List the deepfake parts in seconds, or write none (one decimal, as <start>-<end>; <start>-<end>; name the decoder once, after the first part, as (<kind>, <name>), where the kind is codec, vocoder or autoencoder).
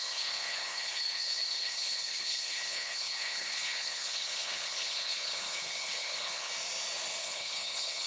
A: 0.0-6.5 (codec, HILCodec); 7.2-8.1